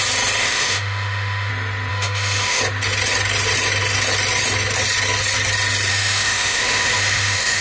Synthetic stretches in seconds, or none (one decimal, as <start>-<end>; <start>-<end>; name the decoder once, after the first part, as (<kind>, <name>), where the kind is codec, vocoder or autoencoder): 0.4-1.5 (autoencoder, DAC-VAE); 1.9-2.6; 5.9-7.6

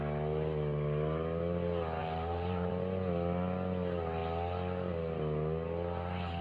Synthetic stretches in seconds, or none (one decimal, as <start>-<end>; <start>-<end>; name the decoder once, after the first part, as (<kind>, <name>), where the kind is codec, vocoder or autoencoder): 2.0-2.7 (vocoder, BigVGAN v2)